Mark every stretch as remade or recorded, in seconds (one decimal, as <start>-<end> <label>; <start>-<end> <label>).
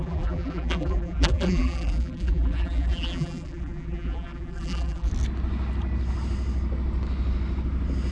0.0-5.1 remade; 5.1-8.1 recorded